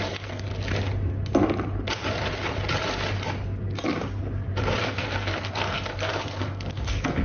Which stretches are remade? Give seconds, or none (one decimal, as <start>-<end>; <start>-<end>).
0.0-0.5; 4.8-7.2